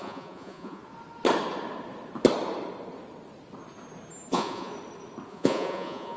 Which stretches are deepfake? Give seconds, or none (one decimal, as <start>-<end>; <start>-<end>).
0.0-0.8; 4.3-4.7; 5.3-6.2